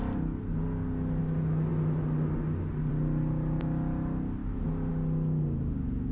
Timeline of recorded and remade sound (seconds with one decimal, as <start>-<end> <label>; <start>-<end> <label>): 0.0-4.4 recorded; 4.4-4.9 remade; 4.9-6.1 recorded